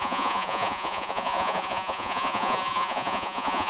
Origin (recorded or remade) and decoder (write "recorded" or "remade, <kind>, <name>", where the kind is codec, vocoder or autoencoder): remade, vocoder, Vocos